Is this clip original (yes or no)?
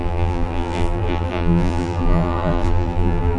no